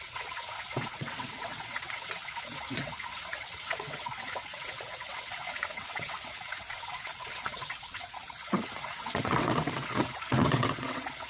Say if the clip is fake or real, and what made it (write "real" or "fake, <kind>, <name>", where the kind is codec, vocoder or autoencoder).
fake, vocoder, WaveNeXt